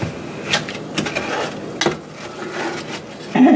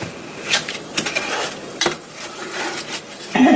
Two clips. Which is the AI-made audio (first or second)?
second